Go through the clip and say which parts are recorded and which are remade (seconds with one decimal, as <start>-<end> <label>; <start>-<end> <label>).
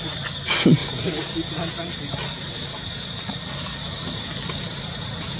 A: 0.0-0.8 remade; 0.8-3.4 recorded; 3.4-5.4 remade